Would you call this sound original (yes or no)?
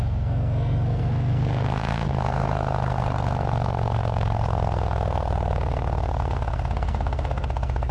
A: no